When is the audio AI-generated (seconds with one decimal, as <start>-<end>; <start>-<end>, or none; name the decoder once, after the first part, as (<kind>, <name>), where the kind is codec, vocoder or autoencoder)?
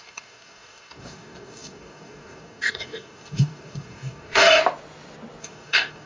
0.0-4.6 (codec, DAC); 5.4-6.1